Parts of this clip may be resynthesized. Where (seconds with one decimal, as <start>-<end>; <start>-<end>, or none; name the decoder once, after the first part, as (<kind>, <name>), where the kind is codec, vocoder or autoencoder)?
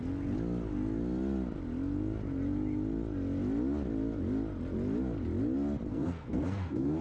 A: 5.9-7.0 (codec, SNAC)